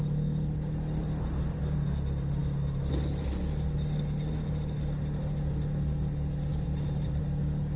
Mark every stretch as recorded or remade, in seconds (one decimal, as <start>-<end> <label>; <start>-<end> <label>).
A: 0.0-1.0 recorded; 1.0-1.6 remade; 1.6-6.5 recorded; 6.5-7.2 remade; 7.2-7.8 recorded